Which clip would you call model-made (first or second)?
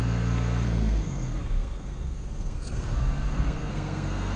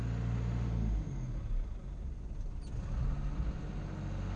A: first